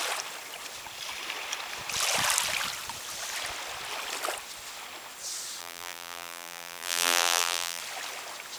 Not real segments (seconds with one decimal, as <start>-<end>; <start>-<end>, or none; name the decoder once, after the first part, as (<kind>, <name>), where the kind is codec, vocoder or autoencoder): 5.6-7.8 (vocoder, BigVGAN v2)